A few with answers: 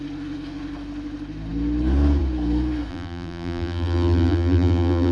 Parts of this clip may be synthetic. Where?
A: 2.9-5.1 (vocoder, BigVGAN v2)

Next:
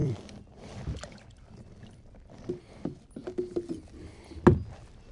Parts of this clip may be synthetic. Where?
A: 0.0-2.6 (vocoder, BigVGAN v2)

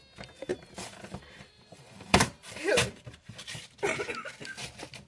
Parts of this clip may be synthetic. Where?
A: 0.5-3.6 (vocoder, BigVGAN v2)